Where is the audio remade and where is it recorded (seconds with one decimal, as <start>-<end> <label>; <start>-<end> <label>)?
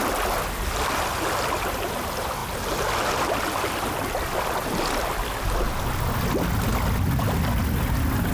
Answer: 0.0-8.3 recorded